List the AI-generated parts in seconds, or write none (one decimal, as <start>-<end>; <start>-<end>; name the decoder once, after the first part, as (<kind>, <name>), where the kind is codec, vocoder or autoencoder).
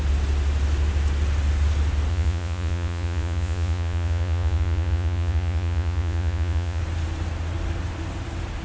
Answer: 2.1-6.8 (vocoder, Vocos)